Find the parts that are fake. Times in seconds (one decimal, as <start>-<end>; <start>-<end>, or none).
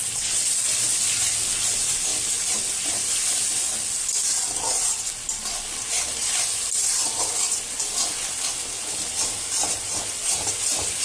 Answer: 0.0-0.7